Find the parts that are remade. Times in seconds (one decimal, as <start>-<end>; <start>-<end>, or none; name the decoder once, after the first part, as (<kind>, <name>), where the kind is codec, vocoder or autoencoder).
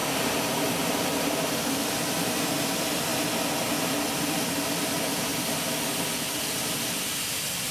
0.0-3.1 (vocoder, BigVGAN v2); 3.7-5.3; 7.3-7.7